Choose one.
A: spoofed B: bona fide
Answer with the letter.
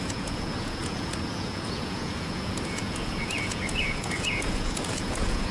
A